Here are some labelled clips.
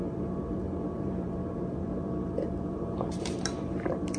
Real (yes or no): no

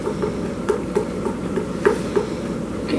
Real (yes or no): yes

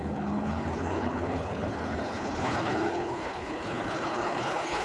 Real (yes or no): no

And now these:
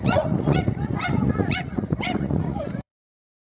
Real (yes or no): no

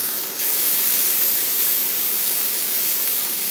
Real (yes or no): no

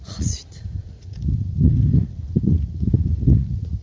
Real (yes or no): no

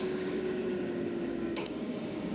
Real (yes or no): no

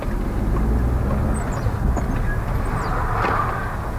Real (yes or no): yes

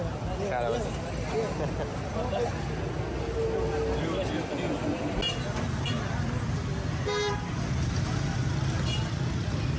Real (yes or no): yes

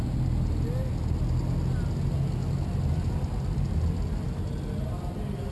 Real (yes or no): yes